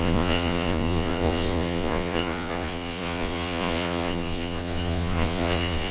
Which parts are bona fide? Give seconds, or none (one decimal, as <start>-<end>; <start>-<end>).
none